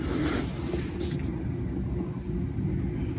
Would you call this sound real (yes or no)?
yes